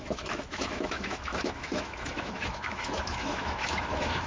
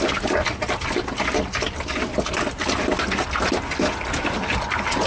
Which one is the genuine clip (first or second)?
second